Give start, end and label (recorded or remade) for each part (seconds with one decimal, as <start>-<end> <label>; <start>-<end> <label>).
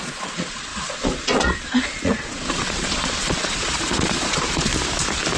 0.0-4.7 remade; 4.7-5.4 recorded